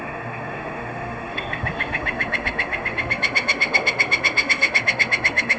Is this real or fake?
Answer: fake